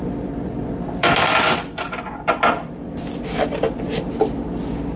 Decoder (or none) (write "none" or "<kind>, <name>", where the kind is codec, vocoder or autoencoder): vocoder, BigVGAN v2